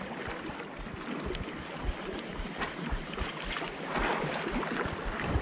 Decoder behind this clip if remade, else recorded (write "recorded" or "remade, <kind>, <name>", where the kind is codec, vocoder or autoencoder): recorded